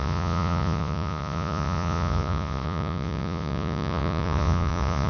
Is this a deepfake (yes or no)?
yes